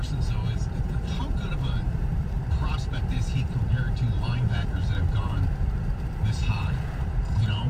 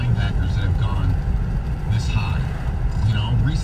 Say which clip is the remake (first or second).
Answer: first